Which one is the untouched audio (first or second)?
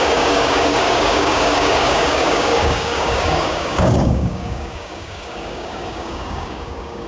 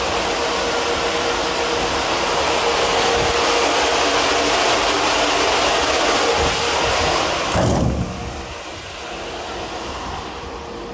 second